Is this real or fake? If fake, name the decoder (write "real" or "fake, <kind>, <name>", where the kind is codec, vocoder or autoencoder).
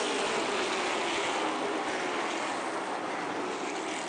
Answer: real